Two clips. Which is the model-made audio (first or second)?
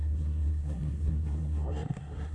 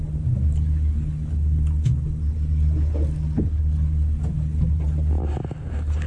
first